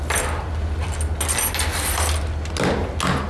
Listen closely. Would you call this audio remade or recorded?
recorded